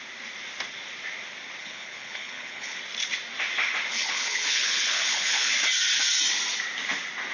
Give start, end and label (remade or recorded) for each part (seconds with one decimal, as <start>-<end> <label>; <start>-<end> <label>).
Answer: 0.0-1.6 recorded; 1.6-2.8 remade; 2.8-3.9 recorded; 3.9-5.5 remade; 5.5-7.3 recorded